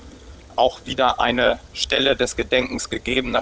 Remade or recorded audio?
remade